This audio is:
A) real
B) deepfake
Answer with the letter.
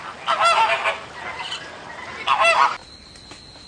A